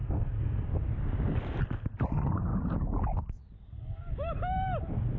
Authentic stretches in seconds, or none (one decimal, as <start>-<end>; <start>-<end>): 0.7-5.2